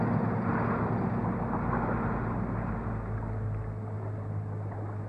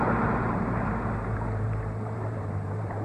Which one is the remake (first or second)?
second